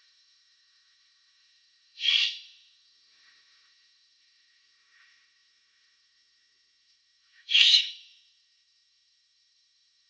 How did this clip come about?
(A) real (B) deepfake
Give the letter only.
B